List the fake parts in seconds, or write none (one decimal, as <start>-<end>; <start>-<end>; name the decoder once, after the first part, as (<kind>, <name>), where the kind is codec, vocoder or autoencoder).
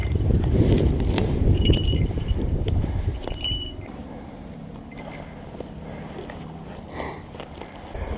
0.0-4.8 (vocoder, BigVGAN v2)